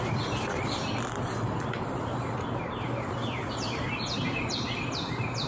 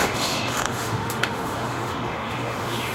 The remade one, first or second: second